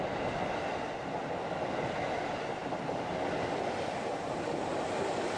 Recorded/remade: recorded